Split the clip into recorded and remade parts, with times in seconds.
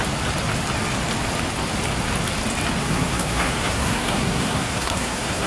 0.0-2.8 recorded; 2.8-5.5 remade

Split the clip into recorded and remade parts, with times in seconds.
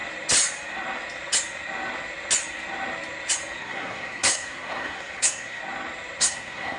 0.0-3.6 recorded; 3.6-5.6 remade; 5.6-6.2 recorded; 6.2-6.8 remade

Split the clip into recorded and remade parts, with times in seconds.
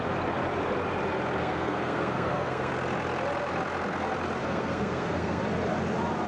0.0-1.4 recorded; 1.4-2.7 remade; 2.7-4.4 recorded; 4.4-5.4 remade; 5.4-6.3 recorded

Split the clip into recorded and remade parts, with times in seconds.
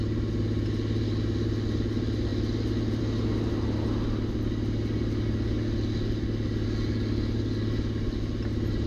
0.0-8.9 recorded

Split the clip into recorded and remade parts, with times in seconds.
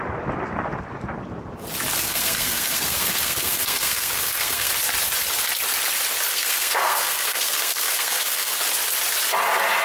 0.0-1.9 recorded; 1.9-4.7 remade; 4.7-6.3 recorded; 6.3-8.5 remade; 8.5-9.8 recorded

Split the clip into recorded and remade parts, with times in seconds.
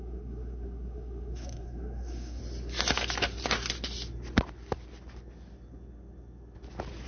0.0-2.4 remade; 2.4-7.1 recorded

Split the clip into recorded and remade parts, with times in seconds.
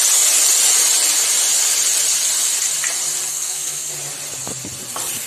0.0-3.3 recorded; 3.3-3.9 remade; 3.9-5.3 recorded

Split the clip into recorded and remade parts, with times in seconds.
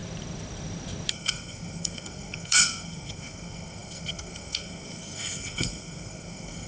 0.0-1.1 recorded; 1.1-6.7 remade